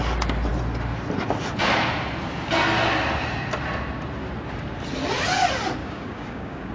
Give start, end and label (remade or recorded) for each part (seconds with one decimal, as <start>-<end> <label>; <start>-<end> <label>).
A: 0.0-5.8 recorded; 5.8-6.7 remade

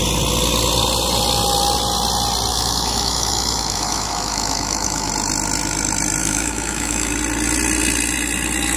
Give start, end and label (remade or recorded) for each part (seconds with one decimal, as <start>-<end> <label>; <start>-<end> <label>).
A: 0.0-2.5 recorded; 2.5-5.1 remade; 5.1-6.2 recorded; 6.2-7.1 remade; 7.1-8.8 recorded

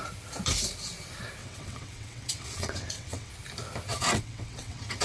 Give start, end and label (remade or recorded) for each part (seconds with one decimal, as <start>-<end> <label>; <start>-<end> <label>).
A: 0.0-1.4 recorded; 1.4-3.3 remade; 3.3-3.9 recorded; 3.9-5.0 remade

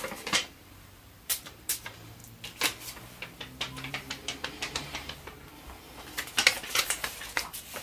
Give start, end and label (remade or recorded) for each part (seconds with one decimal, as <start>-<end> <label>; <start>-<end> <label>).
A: 0.0-2.2 remade; 2.2-3.9 recorded; 3.9-5.5 remade; 5.5-6.8 recorded; 6.8-7.8 remade